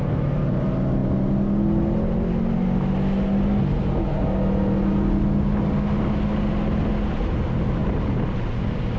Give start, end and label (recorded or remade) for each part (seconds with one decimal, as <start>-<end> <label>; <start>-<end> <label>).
0.0-9.0 recorded